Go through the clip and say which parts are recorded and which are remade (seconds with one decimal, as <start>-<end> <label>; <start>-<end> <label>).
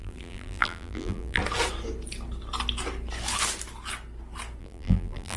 0.0-1.4 remade; 1.4-4.6 recorded; 4.6-5.4 remade